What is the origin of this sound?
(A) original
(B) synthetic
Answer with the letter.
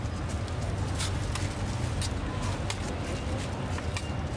A